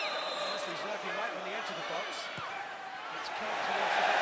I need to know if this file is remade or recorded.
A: remade